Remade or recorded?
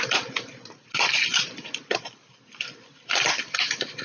recorded